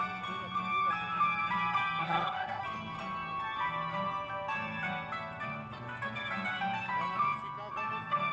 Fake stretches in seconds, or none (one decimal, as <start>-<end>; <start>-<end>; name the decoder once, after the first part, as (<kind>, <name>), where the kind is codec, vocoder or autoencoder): 2.0-2.6 (codec, SNAC)